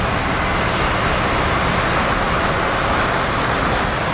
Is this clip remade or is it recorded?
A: recorded